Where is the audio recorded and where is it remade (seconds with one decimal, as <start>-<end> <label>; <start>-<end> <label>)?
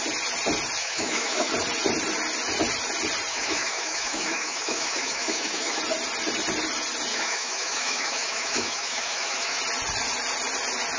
0.0-0.8 recorded; 0.8-1.5 remade; 1.5-3.3 recorded; 3.3-5.8 remade; 5.8-7.1 recorded; 7.1-9.6 remade; 9.6-11.0 recorded